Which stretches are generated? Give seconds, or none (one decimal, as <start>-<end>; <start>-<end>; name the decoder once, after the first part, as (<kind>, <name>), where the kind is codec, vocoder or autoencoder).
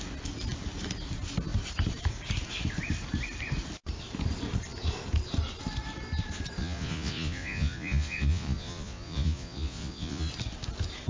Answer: 6.6-10.3 (vocoder, Vocos)